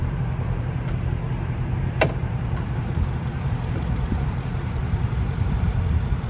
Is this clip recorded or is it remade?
remade